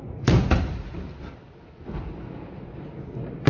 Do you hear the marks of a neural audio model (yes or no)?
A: no